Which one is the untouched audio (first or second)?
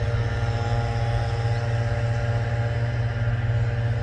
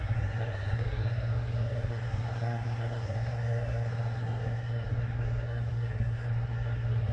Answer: first